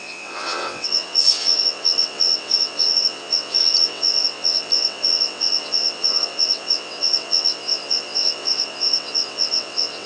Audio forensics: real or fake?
fake